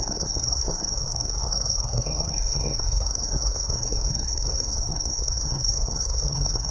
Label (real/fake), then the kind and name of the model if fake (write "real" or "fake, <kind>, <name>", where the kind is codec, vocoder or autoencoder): fake, codec, SNAC